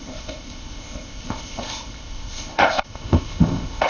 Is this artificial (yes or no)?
yes